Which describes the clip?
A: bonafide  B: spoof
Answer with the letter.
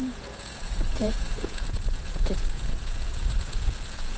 B